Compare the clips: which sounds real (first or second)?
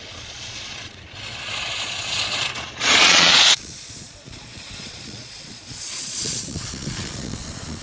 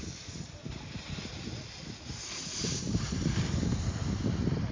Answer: second